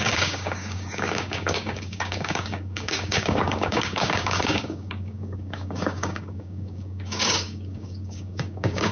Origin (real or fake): fake